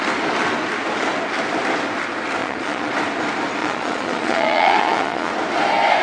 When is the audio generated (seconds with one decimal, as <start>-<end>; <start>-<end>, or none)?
2.4-2.9; 3.6-5.3